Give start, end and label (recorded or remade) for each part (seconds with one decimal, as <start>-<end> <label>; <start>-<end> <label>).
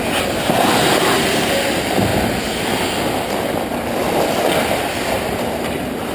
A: 0.0-6.1 recorded